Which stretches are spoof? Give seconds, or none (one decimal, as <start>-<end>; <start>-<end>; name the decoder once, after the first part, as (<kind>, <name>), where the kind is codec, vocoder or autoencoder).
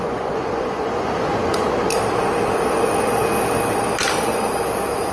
0.0-1.8 (vocoder, Vocos)